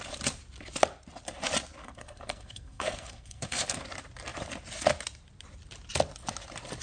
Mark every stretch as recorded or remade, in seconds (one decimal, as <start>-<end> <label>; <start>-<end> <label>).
0.0-1.8 recorded; 1.8-3.8 remade; 3.8-6.8 recorded